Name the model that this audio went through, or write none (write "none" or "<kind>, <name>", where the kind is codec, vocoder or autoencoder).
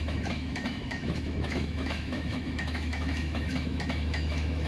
autoencoder, DAC-VAE